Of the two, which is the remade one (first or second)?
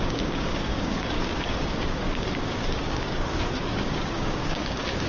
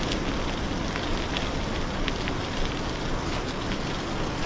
first